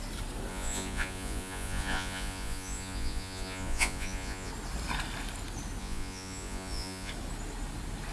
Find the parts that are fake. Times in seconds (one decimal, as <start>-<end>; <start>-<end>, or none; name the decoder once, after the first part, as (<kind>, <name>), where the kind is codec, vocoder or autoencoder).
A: 0.5-4.5 (vocoder, Vocos); 5.8-7.1